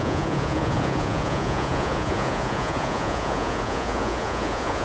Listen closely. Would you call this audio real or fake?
fake